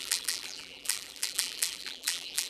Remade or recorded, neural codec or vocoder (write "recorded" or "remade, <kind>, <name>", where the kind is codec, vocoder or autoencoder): remade, vocoder, BigVGAN v2